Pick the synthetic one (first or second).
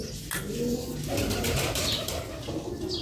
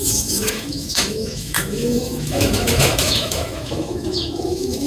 second